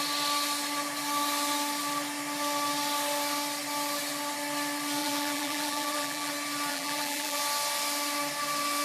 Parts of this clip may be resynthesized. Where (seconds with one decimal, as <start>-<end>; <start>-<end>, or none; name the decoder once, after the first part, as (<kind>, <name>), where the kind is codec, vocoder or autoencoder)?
5.0-6.3 (vocoder, BigVGAN v2); 6.7-7.4